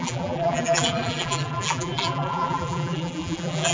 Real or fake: fake